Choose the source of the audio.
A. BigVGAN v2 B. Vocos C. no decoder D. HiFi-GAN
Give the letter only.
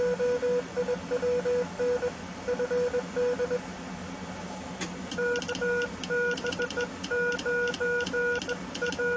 C